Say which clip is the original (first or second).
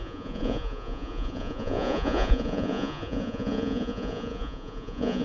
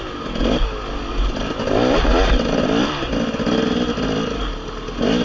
second